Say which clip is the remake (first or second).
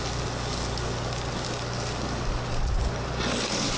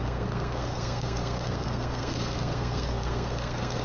second